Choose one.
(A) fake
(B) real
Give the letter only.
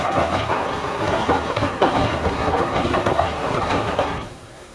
A